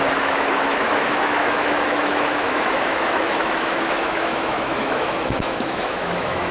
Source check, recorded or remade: remade